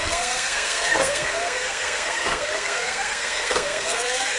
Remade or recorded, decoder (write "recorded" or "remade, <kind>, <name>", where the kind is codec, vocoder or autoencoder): remade, codec, SNAC